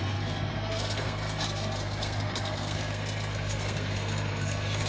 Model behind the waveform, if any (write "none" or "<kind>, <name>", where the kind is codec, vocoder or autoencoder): codec, SNAC